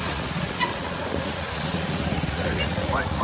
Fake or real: fake